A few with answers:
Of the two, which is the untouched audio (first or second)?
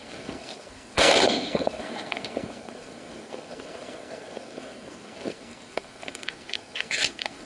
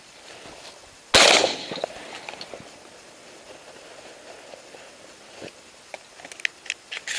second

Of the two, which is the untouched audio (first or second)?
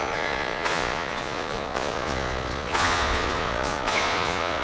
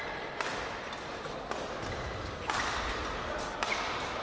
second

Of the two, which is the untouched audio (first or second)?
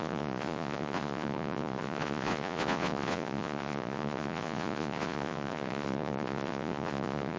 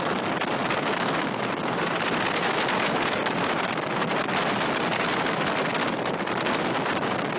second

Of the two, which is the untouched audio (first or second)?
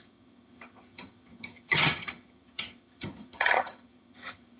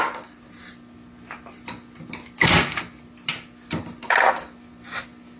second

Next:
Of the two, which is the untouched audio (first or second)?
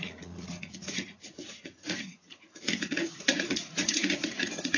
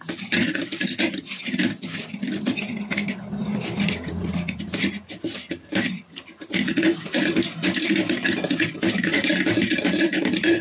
second